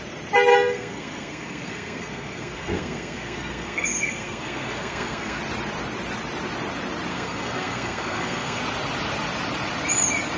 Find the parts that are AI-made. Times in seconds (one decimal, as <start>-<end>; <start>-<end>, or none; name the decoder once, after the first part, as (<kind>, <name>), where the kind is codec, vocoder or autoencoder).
0.5-5.4 (codec, SNAC); 7.1-8.6